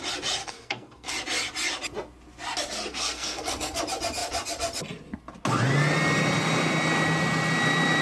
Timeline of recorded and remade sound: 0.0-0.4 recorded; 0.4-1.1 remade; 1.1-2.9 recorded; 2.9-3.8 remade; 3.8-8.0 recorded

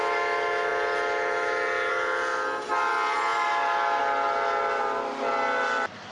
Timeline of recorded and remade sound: 0.0-6.1 recorded

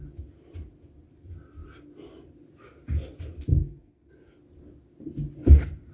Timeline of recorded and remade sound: 0.0-3.6 recorded; 3.6-4.1 remade; 4.1-5.9 recorded

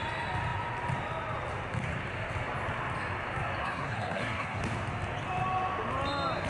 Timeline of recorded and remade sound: 0.0-3.6 recorded; 3.6-4.6 remade; 4.6-6.5 recorded

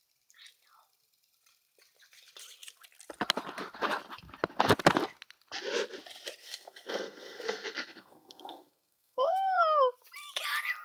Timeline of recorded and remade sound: 0.0-6.4 recorded; 6.4-9.6 remade; 9.6-10.8 recorded

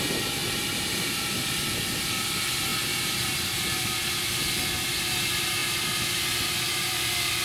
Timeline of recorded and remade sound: 0.0-7.4 recorded

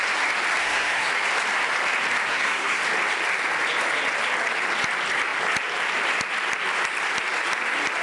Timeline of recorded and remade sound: 0.0-0.6 recorded; 0.6-1.1 remade; 1.1-2.3 recorded; 2.3-2.8 remade; 2.8-8.0 recorded

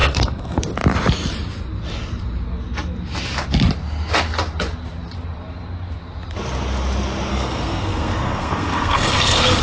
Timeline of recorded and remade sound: 0.0-0.6 remade; 0.6-7.3 recorded; 7.3-9.6 remade